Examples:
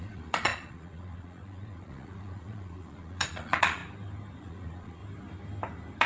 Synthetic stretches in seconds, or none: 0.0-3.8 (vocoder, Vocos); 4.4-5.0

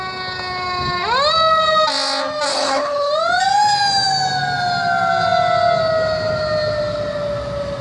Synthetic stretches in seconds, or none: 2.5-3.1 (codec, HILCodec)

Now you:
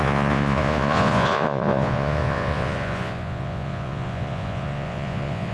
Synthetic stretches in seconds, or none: 0.0-5.5 (vocoder, Vocos)